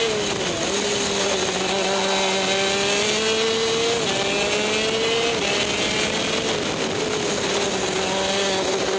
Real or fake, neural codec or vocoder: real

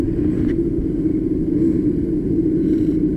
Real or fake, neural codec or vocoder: real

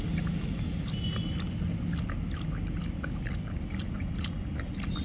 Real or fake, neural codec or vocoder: real